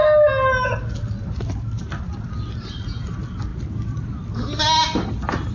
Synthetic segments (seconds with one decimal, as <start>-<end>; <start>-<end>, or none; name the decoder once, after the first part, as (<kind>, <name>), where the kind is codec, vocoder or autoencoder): none